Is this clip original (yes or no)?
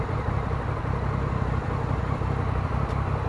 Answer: yes